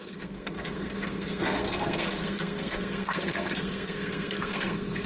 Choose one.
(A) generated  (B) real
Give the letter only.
A